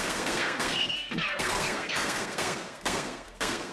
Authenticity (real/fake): fake